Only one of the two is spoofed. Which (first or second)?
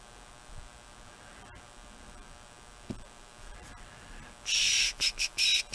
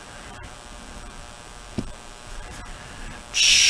second